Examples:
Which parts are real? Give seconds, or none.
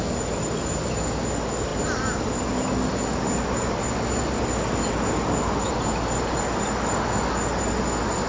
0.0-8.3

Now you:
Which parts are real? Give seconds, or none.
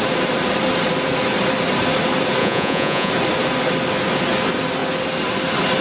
0.0-2.4; 3.1-5.8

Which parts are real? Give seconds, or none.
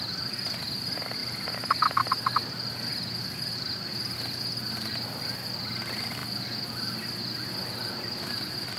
0.0-8.8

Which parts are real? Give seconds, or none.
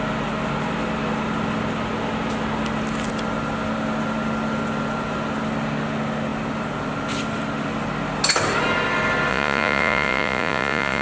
0.0-9.3